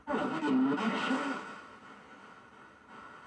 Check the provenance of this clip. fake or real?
real